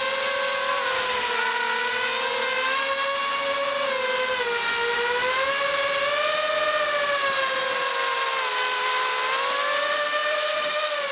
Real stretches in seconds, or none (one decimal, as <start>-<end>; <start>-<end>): 0.0-10.2; 10.7-11.1